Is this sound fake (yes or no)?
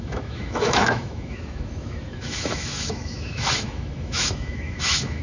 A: yes